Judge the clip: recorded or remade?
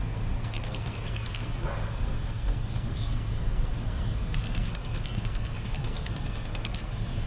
remade